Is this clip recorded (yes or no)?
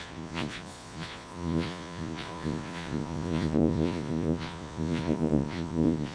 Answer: no